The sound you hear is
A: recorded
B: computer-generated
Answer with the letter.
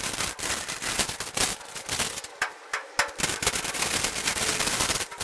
A